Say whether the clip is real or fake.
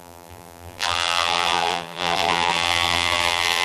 fake